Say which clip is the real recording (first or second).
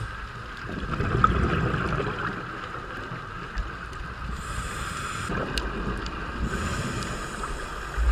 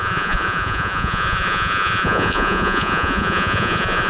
first